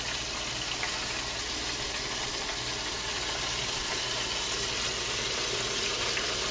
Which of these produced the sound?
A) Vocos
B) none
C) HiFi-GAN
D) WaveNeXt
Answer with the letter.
B